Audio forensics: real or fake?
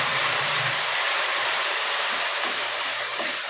fake